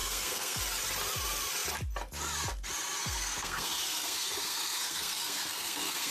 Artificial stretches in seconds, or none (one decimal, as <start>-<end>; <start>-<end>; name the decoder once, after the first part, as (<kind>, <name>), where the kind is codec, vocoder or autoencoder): 0.0-0.6 (codec, SNAC); 3.0-6.1